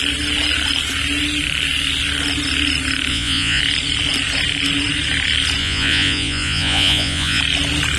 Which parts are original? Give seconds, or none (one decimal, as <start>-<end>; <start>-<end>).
0.0-3.1; 3.6-5.6; 7.4-8.0